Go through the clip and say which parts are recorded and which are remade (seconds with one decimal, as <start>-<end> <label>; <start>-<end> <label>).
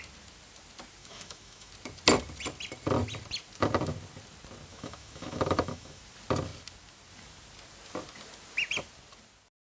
0.0-1.0 recorded; 1.0-1.7 remade; 1.7-4.7 recorded; 4.7-6.0 remade; 6.0-9.7 recorded